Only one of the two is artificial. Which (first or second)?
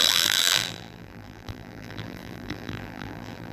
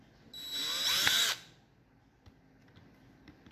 first